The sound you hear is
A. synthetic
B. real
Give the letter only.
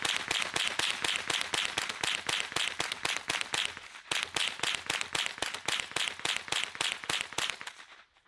B